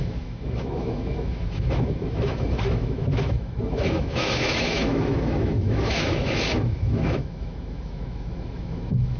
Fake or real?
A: fake